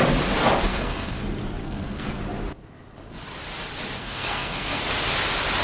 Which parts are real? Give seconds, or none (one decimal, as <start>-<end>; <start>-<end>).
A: 0.0-0.7; 1.2-1.6; 2.2-4.0; 4.8-5.6